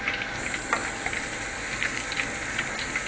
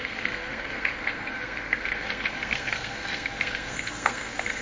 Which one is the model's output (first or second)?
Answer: second